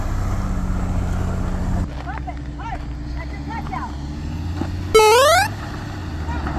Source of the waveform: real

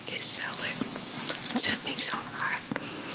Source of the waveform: fake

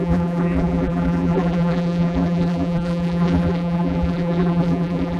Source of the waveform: fake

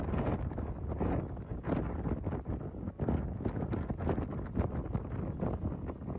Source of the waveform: real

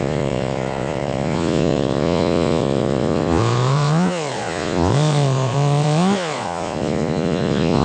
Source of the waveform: fake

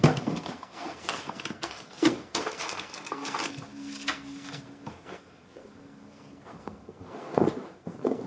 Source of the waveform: fake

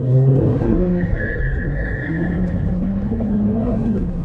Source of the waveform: fake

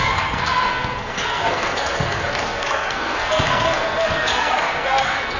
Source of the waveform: fake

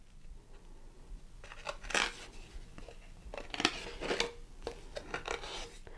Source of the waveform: real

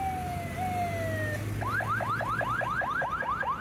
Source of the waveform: real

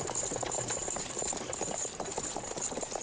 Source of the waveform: real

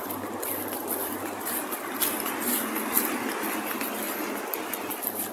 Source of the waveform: real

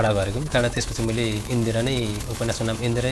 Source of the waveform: fake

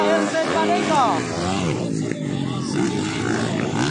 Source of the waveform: real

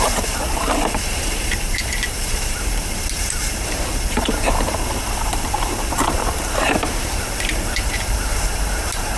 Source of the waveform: fake